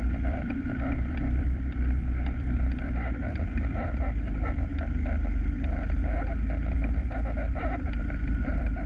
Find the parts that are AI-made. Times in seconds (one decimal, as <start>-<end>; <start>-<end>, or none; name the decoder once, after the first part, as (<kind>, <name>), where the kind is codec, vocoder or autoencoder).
0.0-4.7 (vocoder, BigVGAN v2); 7.5-8.9